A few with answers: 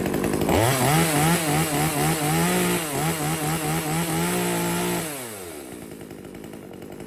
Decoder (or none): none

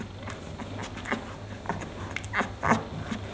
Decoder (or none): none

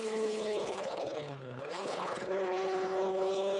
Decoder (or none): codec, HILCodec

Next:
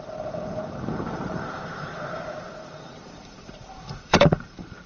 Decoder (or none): vocoder, BigVGAN v2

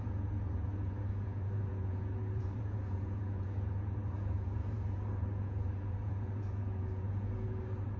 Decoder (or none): vocoder, Vocos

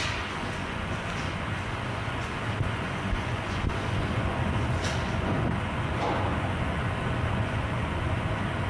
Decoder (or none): vocoder, Vocos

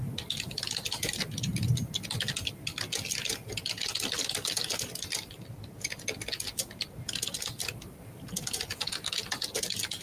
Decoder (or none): none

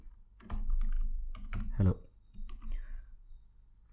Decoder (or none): none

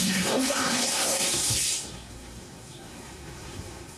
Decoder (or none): codec, SNAC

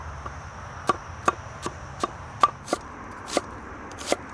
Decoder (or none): vocoder, BigVGAN v2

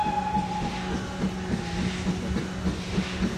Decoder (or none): none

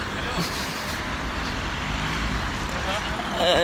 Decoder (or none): vocoder, BigVGAN v2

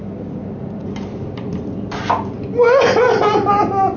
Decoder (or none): none